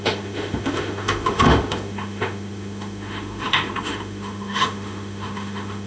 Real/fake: fake